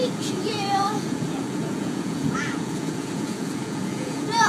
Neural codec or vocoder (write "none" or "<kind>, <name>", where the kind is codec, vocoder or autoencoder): vocoder, Vocos